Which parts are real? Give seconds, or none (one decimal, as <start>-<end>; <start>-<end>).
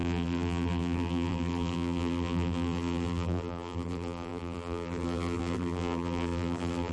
none